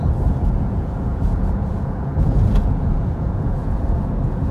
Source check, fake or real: fake